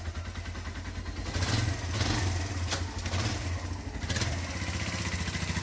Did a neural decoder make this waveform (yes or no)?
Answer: no